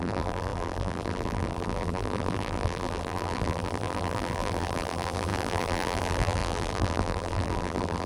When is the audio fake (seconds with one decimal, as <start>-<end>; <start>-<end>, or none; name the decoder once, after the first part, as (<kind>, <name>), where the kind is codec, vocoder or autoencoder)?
0.0-8.1 (vocoder, BigVGAN v2)